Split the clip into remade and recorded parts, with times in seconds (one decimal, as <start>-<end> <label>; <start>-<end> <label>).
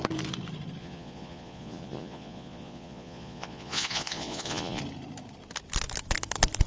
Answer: 0.0-0.8 recorded; 0.8-4.8 remade; 4.8-6.7 recorded